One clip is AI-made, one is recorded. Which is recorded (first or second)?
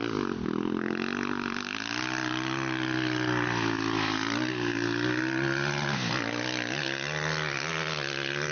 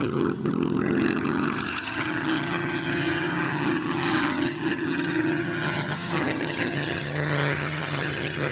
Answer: first